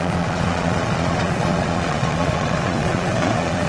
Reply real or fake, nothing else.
fake